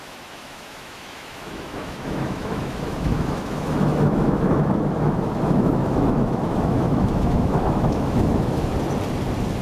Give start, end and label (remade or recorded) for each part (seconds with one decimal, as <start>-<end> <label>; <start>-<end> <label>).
0.0-8.7 remade; 8.7-9.6 recorded